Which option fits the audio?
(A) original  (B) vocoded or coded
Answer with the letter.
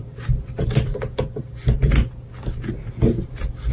A